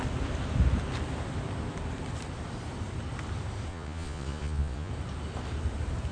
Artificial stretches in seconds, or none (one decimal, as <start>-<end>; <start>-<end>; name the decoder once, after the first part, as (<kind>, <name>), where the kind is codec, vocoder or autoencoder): 3.7-4.9 (vocoder, Vocos)